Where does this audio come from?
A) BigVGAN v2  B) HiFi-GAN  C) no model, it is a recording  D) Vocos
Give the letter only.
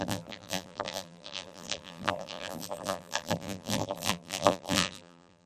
A